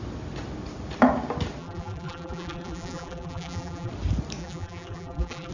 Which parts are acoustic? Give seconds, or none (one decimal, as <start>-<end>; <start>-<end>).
0.0-1.6; 3.9-4.4